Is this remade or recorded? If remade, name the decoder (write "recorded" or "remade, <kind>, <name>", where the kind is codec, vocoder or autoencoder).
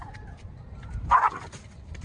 recorded